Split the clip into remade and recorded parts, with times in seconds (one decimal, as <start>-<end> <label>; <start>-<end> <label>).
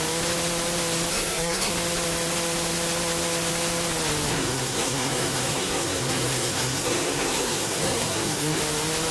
0.0-1.1 recorded; 1.1-1.7 remade; 1.7-4.3 recorded; 4.3-8.6 remade; 8.6-9.1 recorded